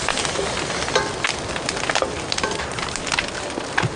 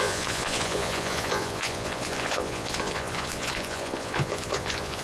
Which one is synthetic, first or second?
second